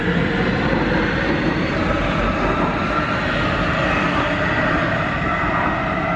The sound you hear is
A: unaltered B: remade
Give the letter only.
A